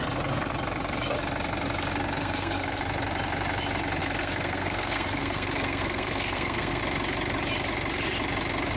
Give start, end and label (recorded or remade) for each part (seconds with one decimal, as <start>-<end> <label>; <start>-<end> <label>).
0.0-2.2 recorded; 2.2-2.8 remade; 2.8-4.0 recorded; 4.0-6.8 remade; 6.8-8.8 recorded